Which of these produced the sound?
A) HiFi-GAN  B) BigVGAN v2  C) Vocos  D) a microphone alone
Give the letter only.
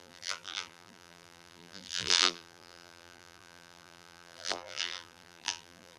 B